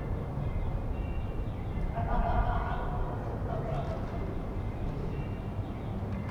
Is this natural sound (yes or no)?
yes